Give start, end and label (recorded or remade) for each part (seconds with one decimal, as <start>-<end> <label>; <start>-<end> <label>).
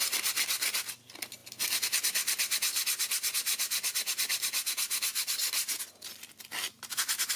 0.0-7.4 recorded